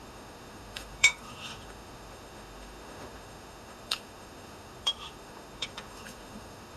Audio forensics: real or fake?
fake